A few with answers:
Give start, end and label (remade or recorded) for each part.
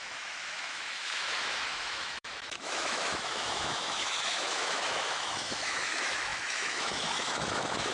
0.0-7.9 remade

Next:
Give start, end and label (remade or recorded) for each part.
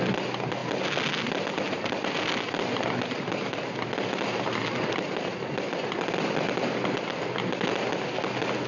0.0-8.7 recorded